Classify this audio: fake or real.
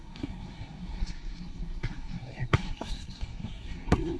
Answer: fake